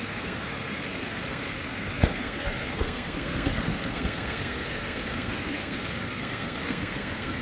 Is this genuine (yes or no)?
no